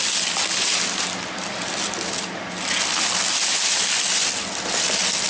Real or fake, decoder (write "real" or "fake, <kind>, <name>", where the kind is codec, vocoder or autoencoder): real